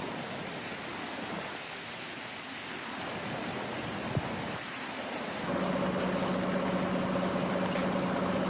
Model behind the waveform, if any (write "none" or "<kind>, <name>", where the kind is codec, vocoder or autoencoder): none